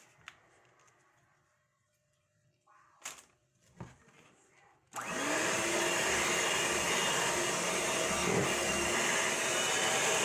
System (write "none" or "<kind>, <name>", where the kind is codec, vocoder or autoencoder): none